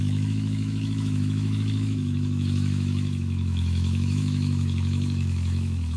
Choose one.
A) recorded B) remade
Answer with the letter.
B